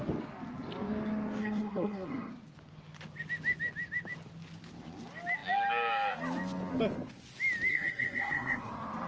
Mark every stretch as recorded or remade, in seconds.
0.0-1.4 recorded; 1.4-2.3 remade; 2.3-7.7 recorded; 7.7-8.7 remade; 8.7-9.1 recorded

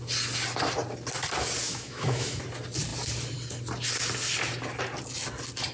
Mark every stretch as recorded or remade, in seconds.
0.0-1.7 recorded; 1.7-2.4 remade; 2.4-5.7 recorded

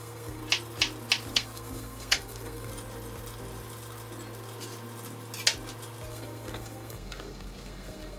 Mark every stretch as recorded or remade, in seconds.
0.0-0.4 remade; 0.4-1.3 recorded; 1.3-2.7 remade; 2.7-6.1 recorded; 6.1-8.2 remade

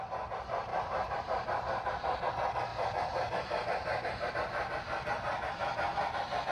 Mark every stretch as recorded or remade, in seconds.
0.0-0.7 recorded; 0.7-2.3 remade; 2.3-2.7 recorded; 2.7-4.3 remade; 4.3-6.5 recorded

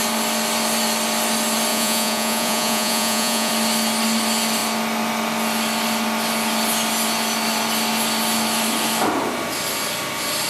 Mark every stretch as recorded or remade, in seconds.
0.0-1.7 recorded; 1.7-3.5 remade; 3.5-10.5 recorded